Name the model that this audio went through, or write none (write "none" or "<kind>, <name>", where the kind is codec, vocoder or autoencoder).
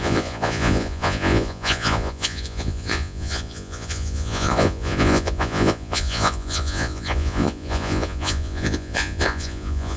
vocoder, Vocos